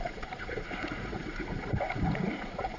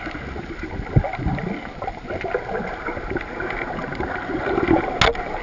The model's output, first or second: first